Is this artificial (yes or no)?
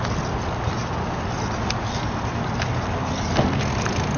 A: no